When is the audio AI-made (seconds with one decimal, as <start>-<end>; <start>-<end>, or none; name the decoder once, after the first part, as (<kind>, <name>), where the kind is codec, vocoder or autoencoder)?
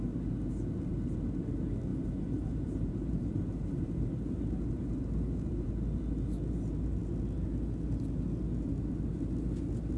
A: 1.9-5.7 (vocoder, BigVGAN v2)